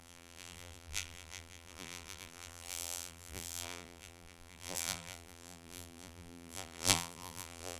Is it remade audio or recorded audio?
remade